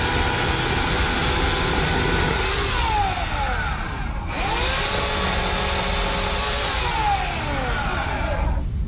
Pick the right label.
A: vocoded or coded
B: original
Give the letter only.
B